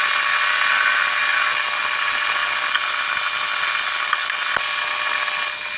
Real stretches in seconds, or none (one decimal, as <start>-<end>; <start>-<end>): 0.0-5.8